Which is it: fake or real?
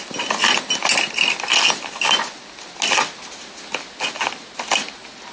real